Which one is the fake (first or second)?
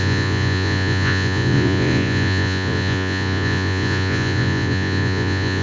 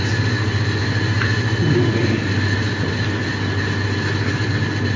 first